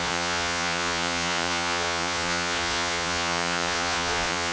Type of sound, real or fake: fake